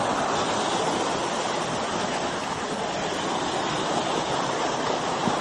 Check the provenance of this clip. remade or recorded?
recorded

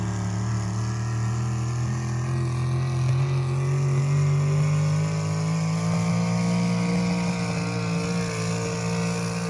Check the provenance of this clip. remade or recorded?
recorded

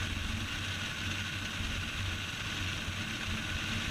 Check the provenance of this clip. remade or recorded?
recorded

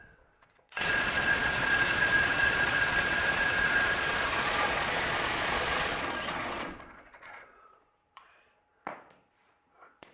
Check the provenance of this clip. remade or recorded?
remade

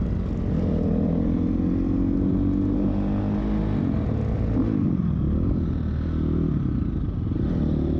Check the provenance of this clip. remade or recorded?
recorded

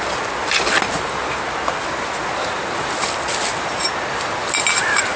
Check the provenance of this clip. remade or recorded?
recorded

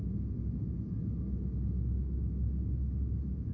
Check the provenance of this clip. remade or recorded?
recorded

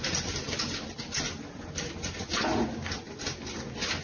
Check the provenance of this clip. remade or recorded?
recorded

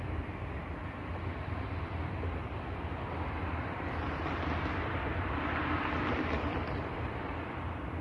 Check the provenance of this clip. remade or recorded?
remade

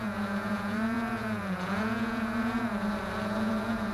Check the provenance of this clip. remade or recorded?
remade